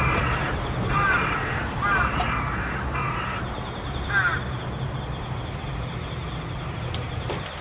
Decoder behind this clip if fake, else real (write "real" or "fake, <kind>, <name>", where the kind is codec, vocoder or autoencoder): real